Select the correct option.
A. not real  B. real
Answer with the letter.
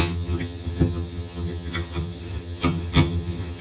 A